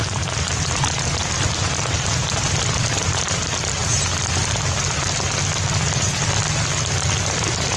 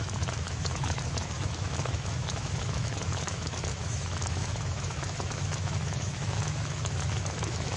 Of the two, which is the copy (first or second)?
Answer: second